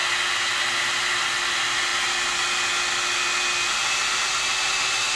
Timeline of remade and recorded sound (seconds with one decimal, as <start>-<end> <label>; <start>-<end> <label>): 0.0-5.2 recorded